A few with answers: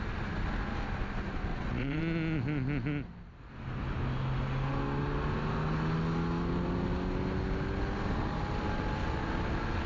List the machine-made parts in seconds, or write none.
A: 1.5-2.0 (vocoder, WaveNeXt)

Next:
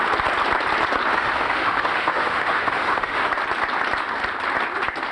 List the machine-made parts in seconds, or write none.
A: 1.1-3.3 (autoencoder, DAC-VAE)

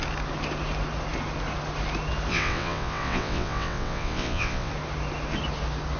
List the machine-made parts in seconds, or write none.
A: 2.3-4.7 (vocoder, WaveNeXt)

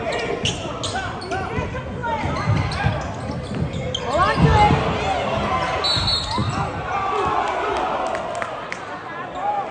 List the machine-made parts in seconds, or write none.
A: 2.0-2.9 (vocoder, BigVGAN v2)

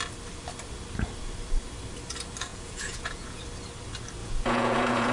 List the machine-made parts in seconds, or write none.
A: 2.5-3.4 (vocoder, Vocos); 4.2-5.1

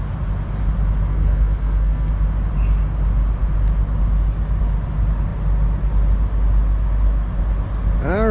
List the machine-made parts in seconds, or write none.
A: 1.1-2.1 (codec, SNAC)

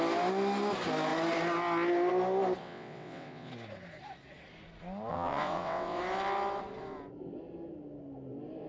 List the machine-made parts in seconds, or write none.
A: 2.6-3.5 (vocoder, WaveNeXt); 5.1-6.0

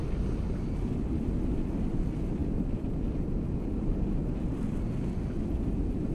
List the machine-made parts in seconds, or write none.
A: none